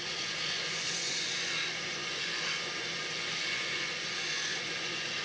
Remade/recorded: remade